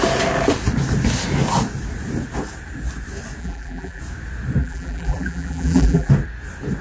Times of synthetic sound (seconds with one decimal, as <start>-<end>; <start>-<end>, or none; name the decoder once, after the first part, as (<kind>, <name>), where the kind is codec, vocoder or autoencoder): 3.4-4.0 (vocoder, BigVGAN v2); 4.6-6.1